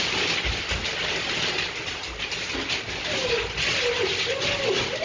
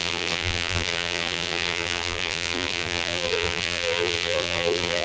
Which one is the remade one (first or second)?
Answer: second